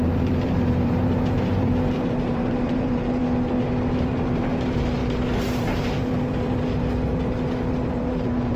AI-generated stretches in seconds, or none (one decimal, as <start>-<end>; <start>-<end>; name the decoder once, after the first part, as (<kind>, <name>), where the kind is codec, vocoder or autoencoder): 0.0-3.2 (vocoder, BigVGAN v2); 4.0-5.0; 5.6-8.6